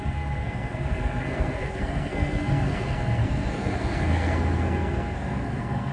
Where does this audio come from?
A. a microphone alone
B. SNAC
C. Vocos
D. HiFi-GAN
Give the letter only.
B